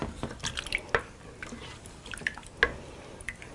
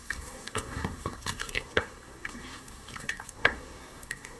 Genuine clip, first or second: first